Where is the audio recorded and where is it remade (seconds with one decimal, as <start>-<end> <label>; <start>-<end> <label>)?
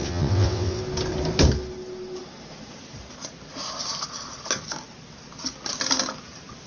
0.0-0.8 remade; 0.8-6.7 recorded